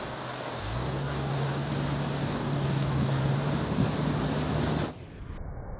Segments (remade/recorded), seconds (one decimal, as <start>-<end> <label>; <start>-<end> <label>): 0.0-1.7 remade; 1.7-2.2 recorded; 2.2-3.2 remade; 3.2-5.8 recorded